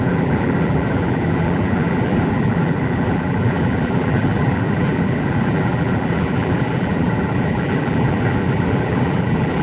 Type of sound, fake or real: fake